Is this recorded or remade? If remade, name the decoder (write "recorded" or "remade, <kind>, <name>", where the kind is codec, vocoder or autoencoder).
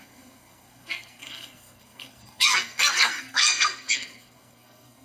remade, codec, SNAC